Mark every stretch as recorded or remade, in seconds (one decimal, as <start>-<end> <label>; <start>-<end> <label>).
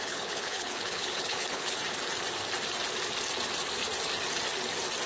0.0-1.8 remade; 1.8-5.1 recorded